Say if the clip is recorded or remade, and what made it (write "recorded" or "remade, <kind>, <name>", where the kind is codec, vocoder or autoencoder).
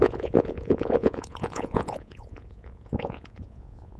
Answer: remade, vocoder, Vocos